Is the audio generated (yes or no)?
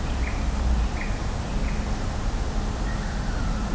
no